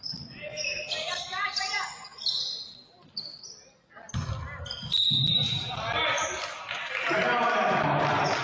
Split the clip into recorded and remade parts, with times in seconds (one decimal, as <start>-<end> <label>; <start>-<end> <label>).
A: 0.0-8.4 recorded